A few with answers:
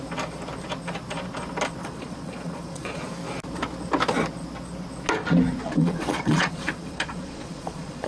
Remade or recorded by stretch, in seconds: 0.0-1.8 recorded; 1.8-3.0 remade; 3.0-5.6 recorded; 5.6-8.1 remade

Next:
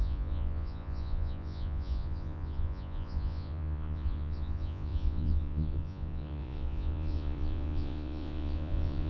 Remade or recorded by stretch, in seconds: 0.0-9.1 remade

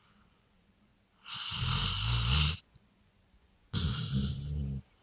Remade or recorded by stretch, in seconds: 0.0-0.9 remade; 0.9-2.6 recorded; 2.6-3.8 remade; 3.8-5.0 recorded

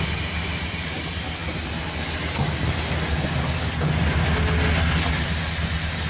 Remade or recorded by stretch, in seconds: 0.0-6.1 recorded